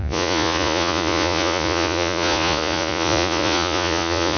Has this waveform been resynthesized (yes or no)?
yes